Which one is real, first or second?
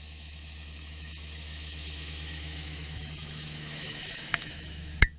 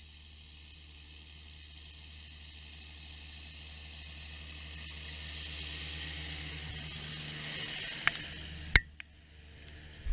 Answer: second